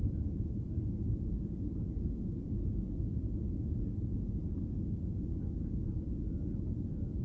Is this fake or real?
real